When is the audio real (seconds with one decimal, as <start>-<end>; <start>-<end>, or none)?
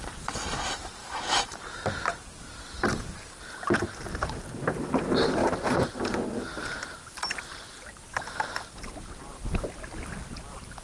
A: 0.0-1.0; 1.6-2.9; 3.9-5.4; 6.0-6.5; 7.0-10.8